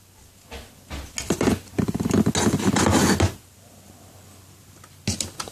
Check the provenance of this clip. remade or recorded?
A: recorded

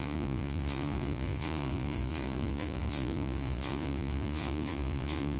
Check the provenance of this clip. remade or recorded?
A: remade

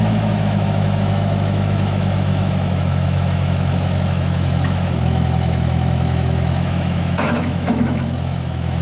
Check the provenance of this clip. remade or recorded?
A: remade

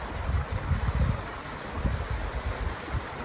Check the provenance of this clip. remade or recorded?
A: recorded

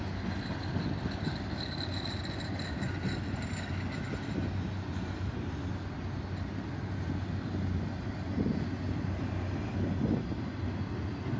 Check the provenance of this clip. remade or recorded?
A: recorded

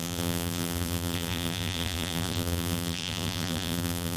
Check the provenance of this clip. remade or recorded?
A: remade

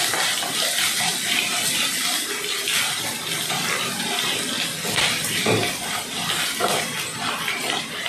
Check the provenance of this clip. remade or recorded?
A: recorded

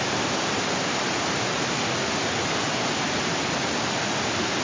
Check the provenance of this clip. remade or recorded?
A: recorded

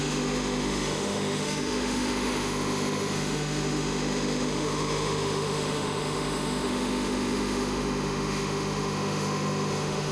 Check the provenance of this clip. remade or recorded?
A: remade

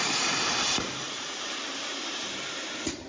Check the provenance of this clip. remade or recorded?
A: remade